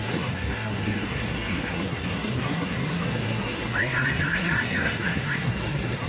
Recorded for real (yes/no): no